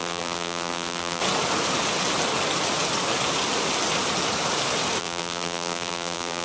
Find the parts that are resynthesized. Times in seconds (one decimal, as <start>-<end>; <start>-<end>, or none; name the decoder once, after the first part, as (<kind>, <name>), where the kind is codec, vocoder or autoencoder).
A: 0.0-1.2 (vocoder, BigVGAN v2); 5.0-6.4